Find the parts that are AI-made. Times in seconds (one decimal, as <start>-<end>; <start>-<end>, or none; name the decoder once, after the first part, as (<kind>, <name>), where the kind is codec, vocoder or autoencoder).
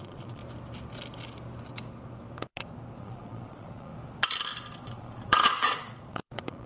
0.0-0.4 (vocoder, Vocos); 3.0-3.9; 4.8-6.7